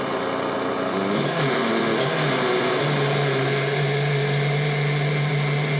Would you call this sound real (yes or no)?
yes